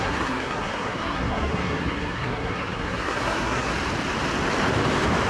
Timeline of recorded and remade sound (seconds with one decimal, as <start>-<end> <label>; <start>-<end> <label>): 0.0-3.7 remade; 3.7-5.3 recorded